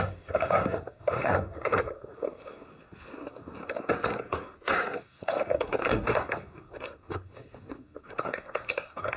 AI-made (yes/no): yes